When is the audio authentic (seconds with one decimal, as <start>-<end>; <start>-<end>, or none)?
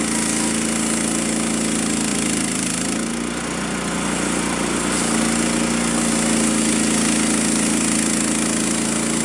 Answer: 0.0-2.1; 3.1-9.2